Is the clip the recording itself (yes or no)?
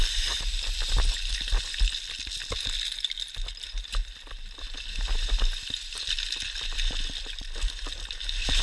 yes